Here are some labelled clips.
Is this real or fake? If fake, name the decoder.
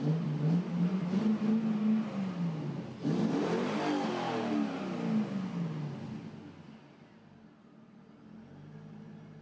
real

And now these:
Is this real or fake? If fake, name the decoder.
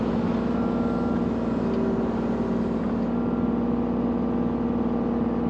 real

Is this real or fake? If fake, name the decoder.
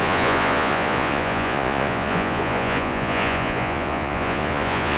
fake, vocoder, Vocos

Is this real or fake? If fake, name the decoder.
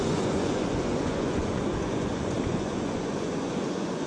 fake, vocoder, Vocos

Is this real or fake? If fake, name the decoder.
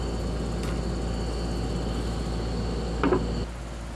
real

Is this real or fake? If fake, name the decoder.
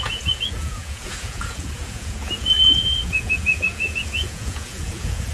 fake, vocoder, Vocos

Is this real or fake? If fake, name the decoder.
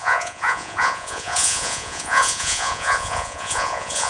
fake, vocoder, Vocos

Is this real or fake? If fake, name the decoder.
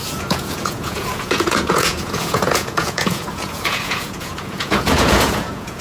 fake, vocoder, Vocos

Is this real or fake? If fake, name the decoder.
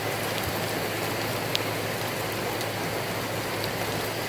real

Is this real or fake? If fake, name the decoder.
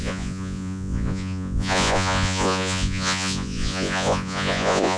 fake, vocoder, Vocos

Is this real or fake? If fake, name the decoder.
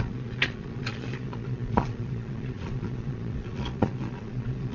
fake, vocoder, Vocos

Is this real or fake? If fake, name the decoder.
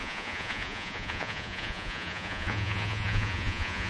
fake, vocoder, Vocos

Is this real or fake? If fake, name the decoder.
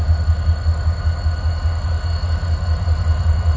real